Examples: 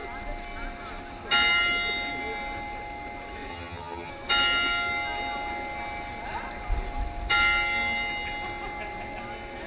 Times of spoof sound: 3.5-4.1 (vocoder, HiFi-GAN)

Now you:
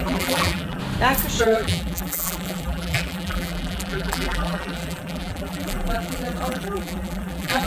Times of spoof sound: 0.0-0.8 (vocoder, BigVGAN v2); 1.4-7.7

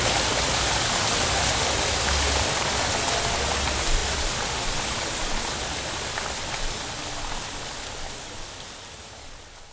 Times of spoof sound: none

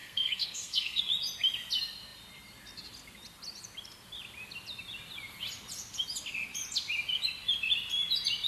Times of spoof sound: 0.0-1.0 (codec, SNAC)